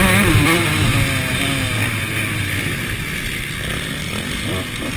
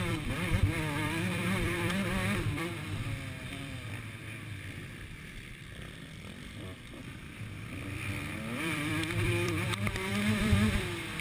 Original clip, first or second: first